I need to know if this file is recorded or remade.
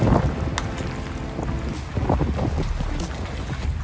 recorded